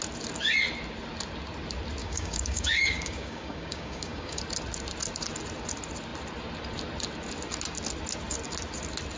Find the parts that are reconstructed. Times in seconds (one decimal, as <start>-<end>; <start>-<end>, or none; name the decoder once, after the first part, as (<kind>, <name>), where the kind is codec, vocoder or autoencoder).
2.0-4.4 (codec, DAC)